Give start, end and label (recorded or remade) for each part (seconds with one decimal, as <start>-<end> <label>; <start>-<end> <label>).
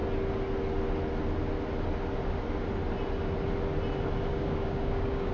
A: 0.0-4.3 recorded; 4.3-5.3 remade